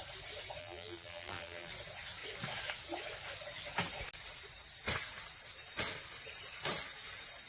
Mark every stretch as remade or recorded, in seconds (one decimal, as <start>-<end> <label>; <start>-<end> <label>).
0.0-0.6 recorded; 0.6-1.7 remade; 1.7-7.5 recorded